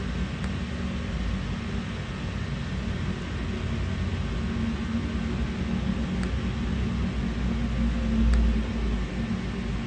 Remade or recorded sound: recorded